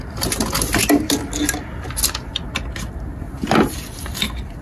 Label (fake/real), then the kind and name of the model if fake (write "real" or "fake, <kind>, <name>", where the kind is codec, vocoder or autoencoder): real